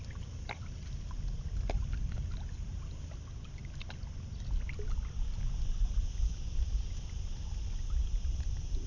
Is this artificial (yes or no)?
no